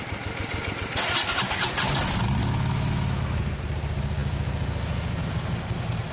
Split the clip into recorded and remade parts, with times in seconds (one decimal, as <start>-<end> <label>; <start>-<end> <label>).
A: 0.0-2.4 recorded; 2.4-3.4 remade; 3.4-6.1 recorded